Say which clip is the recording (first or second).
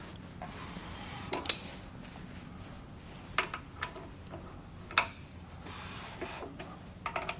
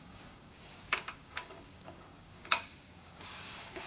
first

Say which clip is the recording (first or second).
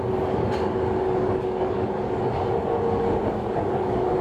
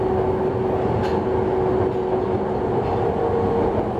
second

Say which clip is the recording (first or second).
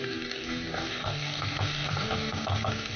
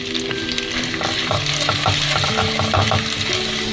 second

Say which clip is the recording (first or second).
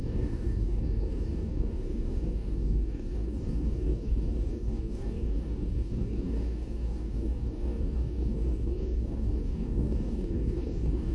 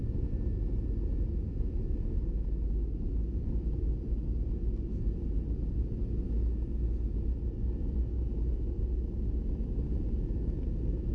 second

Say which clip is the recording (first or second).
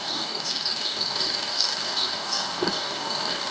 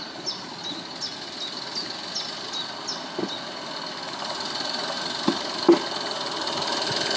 second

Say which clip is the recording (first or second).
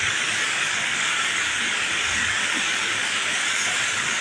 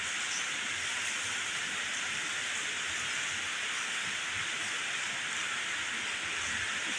second